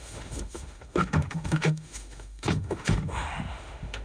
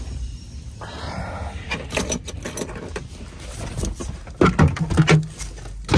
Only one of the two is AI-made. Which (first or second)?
first